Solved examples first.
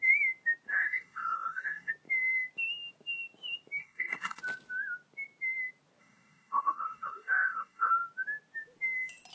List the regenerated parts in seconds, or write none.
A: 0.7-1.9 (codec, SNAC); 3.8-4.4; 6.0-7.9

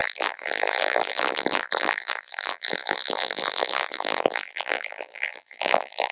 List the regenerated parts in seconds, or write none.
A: 0.0-6.1 (vocoder, BigVGAN v2)

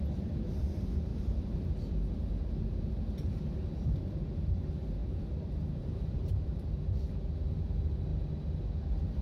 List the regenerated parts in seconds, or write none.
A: 1.1-1.7 (vocoder, BigVGAN v2); 5.0-6.8

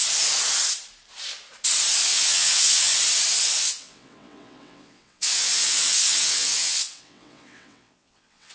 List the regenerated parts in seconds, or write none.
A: 2.1-2.9 (vocoder, WaveNeXt); 3.6-8.5

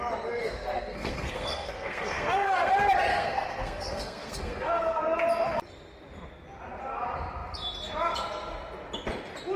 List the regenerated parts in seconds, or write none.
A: 0.4-2.7 (codec, SNAC); 3.1-5.0

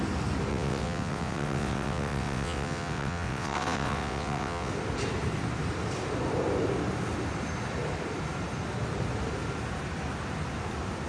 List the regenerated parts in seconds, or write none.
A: 0.5-4.7 (vocoder, WaveNeXt)

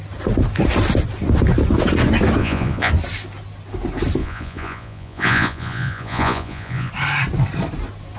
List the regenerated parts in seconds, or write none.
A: 2.4-2.9 (vocoder, Vocos); 4.2-6.9

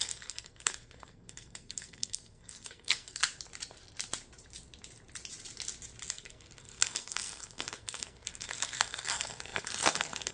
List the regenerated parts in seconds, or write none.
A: 0.0-3.2 (codec, SNAC); 6.1-10.3